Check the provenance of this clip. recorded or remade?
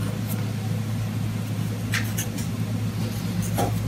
recorded